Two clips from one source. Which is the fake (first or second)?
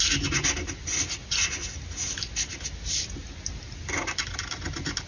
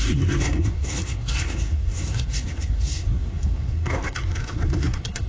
second